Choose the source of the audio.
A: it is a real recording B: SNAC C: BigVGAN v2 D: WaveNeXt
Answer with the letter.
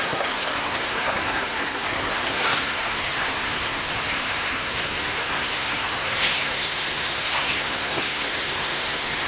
B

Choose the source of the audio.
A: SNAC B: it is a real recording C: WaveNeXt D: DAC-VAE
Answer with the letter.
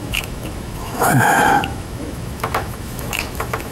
D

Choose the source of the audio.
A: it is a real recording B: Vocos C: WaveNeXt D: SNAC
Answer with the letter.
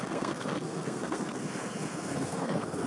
D